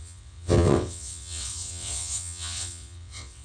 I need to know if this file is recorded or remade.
remade